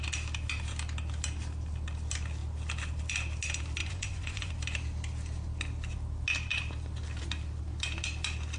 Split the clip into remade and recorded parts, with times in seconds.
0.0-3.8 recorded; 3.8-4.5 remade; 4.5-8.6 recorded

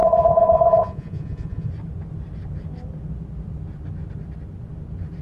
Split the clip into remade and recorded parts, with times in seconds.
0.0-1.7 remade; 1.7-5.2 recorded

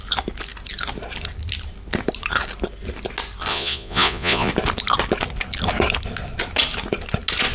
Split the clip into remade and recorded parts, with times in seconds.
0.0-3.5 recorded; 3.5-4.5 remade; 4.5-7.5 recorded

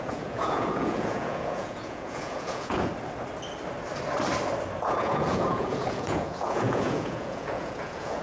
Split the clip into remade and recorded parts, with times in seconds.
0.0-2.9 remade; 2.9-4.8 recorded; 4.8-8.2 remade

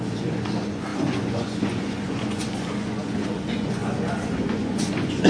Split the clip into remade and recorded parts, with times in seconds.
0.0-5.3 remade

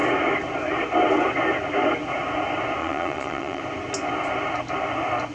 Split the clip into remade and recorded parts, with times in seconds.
0.0-2.8 recorded; 2.8-3.6 remade; 3.6-5.3 recorded

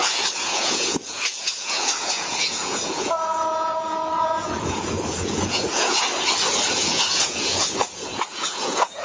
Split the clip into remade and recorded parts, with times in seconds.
0.0-6.1 remade; 6.1-6.7 recorded; 6.7-9.0 remade